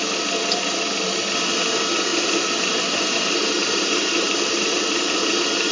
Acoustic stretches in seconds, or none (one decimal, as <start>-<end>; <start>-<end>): 0.0-2.1